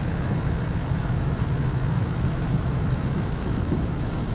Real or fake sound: fake